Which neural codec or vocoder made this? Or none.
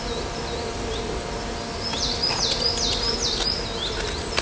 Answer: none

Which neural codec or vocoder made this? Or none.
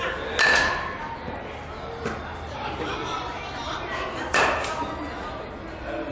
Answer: none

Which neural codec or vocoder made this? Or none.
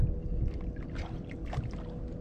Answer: none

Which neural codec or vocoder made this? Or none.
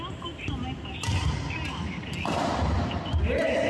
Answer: none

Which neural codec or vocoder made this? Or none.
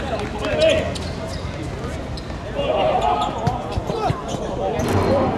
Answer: none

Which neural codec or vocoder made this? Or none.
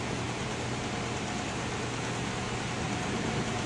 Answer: none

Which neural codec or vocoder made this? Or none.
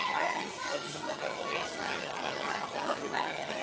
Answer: vocoder, HiFi-GAN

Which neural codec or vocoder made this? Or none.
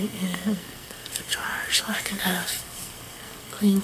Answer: codec, SNAC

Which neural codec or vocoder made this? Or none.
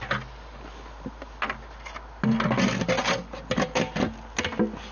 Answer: none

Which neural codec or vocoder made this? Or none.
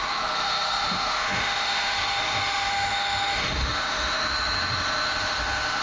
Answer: autoencoder, DAC-VAE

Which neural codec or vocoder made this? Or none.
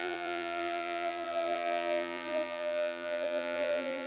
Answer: vocoder, BigVGAN v2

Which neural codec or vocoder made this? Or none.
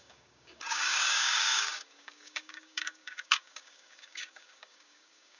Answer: codec, DAC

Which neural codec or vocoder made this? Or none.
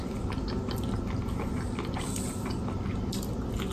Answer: none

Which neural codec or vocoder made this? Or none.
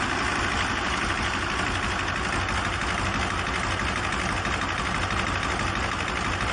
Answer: none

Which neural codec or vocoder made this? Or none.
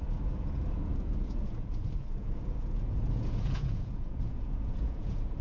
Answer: vocoder, Vocos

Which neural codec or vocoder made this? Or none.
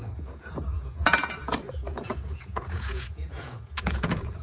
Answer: vocoder, Vocos